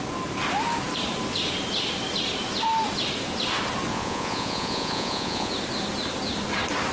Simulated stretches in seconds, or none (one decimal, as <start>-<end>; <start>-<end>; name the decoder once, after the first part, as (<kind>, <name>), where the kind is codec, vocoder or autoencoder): 3.9-5.5 (vocoder, Vocos)